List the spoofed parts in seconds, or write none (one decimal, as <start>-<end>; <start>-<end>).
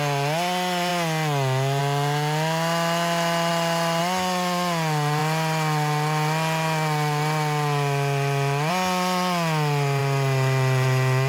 none